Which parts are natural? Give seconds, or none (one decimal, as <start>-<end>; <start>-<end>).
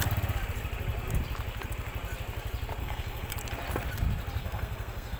0.0-2.8; 3.3-4.4